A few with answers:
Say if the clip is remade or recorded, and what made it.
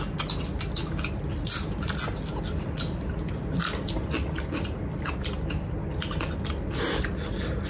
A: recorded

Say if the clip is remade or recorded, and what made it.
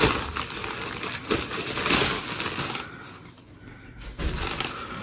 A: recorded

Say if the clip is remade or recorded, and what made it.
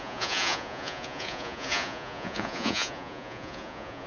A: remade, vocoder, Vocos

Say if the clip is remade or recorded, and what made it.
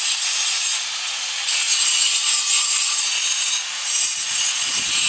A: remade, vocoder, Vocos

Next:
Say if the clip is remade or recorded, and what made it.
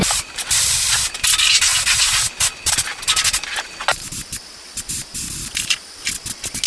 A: recorded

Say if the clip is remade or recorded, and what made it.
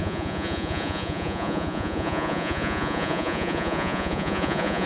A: remade, vocoder, Vocos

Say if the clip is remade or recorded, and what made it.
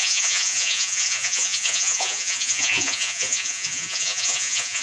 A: remade, vocoder, Vocos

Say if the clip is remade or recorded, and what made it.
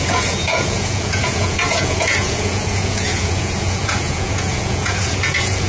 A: remade, vocoder, Vocos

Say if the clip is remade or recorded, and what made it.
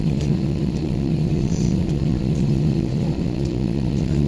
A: remade, vocoder, Vocos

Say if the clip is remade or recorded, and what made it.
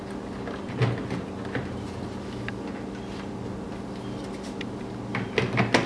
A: recorded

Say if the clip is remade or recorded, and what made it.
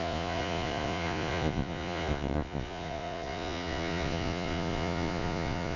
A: remade, vocoder, Vocos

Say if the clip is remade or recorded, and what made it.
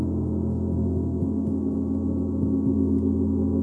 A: recorded